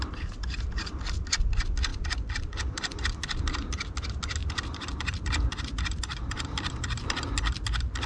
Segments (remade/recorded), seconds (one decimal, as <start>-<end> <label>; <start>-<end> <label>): 0.0-1.9 recorded; 1.9-3.0 remade; 3.0-4.4 recorded; 4.4-6.7 remade; 6.7-8.1 recorded